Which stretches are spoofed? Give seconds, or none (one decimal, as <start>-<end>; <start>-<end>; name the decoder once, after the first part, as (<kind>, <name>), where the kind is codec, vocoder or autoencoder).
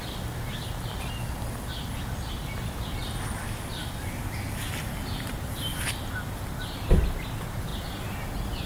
5.7-6.4 (vocoder, BigVGAN v2)